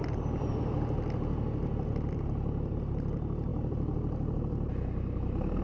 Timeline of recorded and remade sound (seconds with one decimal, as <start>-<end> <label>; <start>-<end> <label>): 0.0-5.6 recorded